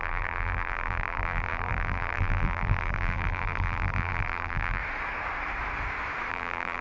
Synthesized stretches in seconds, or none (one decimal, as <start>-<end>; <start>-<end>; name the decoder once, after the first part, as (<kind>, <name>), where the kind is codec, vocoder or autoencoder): 0.0-4.8 (vocoder, BigVGAN v2); 6.3-6.8